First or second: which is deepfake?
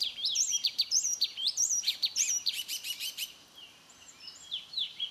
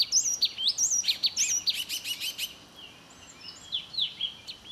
first